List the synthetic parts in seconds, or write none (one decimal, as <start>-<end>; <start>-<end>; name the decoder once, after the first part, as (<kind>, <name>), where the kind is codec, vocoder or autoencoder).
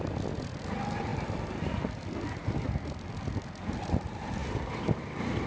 2.4-3.2 (vocoder, BigVGAN v2); 4.4-5.5